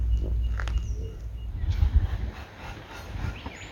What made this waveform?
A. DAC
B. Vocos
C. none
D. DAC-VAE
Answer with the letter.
C